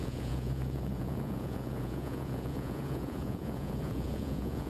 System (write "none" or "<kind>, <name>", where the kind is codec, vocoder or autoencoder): vocoder, Vocos